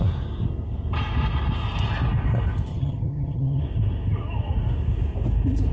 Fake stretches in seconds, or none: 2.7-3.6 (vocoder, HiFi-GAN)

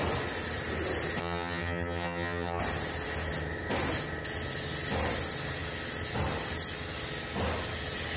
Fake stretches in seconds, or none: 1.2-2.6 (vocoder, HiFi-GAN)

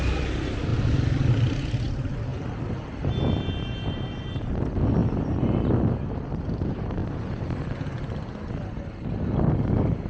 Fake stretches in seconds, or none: none

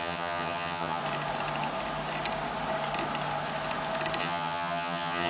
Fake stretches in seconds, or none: 0.0-1.0 (vocoder, HiFi-GAN); 4.2-5.3

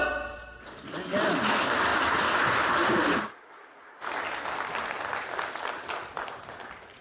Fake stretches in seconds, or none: none

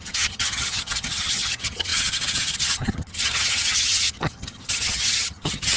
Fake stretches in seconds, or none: 0.0-5.8 (vocoder, HiFi-GAN)

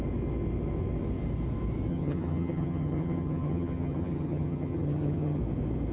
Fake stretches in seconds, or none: 1.9-5.4 (vocoder, HiFi-GAN)